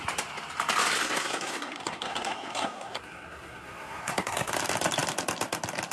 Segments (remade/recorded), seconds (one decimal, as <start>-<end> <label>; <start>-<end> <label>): 0.0-1.0 recorded; 1.0-4.5 remade; 4.5-5.9 recorded